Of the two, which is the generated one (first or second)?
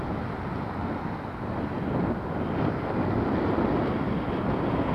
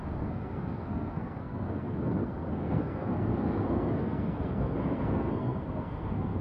second